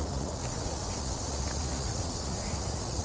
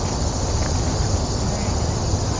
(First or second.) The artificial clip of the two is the first